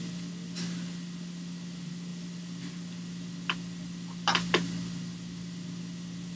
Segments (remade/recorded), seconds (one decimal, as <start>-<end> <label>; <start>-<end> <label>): 0.0-6.4 recorded